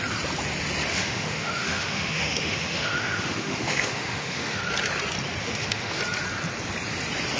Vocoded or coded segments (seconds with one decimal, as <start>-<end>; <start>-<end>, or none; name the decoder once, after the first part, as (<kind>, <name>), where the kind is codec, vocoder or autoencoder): 0.9-4.6 (autoencoder, DAC-VAE); 5.4-6.0